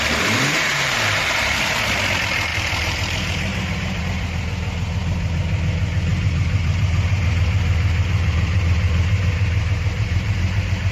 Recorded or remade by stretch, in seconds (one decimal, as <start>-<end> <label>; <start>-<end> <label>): 0.0-0.5 recorded; 0.5-1.2 remade; 1.2-2.5 recorded; 2.5-4.0 remade; 4.0-6.1 recorded; 6.1-10.9 remade